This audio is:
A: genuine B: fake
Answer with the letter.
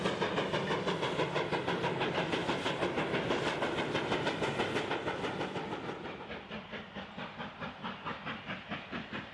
A